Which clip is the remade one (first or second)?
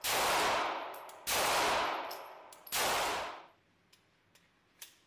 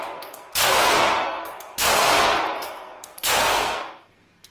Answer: second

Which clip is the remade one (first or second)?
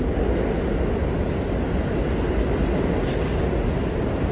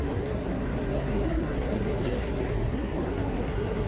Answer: second